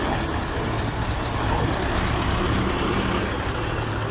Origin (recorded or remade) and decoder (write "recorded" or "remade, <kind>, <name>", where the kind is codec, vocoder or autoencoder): recorded